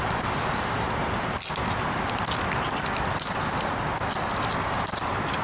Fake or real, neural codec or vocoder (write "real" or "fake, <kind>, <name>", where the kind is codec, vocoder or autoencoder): real